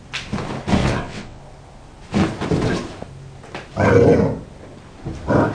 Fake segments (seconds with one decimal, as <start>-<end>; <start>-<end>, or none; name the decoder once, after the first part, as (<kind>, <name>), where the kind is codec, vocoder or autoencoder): 0.8-1.4 (vocoder, WaveNeXt)